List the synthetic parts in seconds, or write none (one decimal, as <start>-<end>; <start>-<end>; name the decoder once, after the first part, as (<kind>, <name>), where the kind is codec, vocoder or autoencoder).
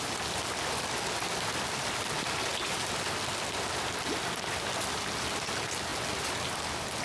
none